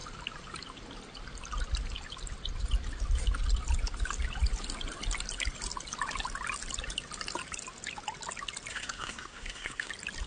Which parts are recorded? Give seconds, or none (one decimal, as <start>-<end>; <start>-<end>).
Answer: 0.0-8.7; 9.9-10.3